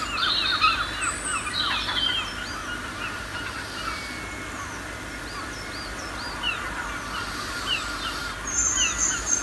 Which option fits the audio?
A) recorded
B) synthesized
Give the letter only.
A